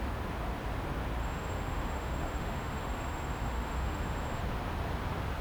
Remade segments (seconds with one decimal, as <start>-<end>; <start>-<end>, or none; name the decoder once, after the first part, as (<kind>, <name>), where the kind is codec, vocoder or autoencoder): 1.2-4.4 (autoencoder, DAC-VAE)